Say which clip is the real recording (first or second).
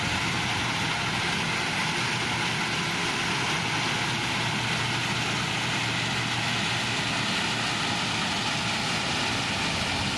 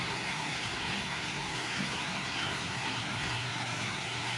first